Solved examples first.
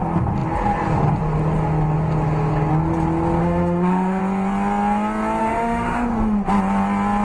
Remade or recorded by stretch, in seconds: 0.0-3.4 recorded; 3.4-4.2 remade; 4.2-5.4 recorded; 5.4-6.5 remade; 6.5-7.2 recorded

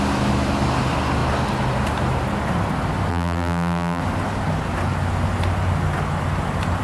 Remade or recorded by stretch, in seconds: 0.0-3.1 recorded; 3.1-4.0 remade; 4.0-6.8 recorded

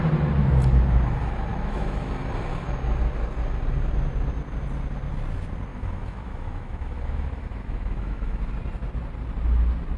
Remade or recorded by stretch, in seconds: 0.0-1.5 recorded; 1.5-2.1 remade; 2.1-5.7 recorded; 5.7-8.4 remade; 8.4-10.0 recorded